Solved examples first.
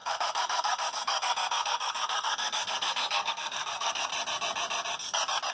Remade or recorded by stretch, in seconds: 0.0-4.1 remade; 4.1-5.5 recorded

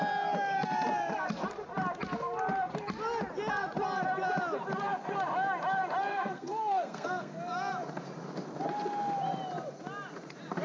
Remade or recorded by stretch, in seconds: 0.0-6.1 recorded; 6.1-7.4 remade; 7.4-10.6 recorded

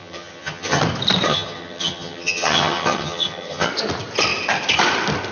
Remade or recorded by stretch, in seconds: 0.0-0.8 remade; 0.8-1.3 recorded; 1.3-3.7 remade; 3.7-5.3 recorded